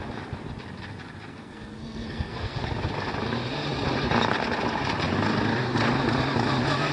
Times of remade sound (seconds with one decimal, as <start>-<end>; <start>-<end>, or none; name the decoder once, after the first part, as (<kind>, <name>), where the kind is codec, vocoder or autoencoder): 1.3-2.6 (codec, SNAC)